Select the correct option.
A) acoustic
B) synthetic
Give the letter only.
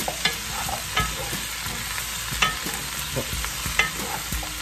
A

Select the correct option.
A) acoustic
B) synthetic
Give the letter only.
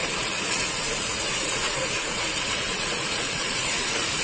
B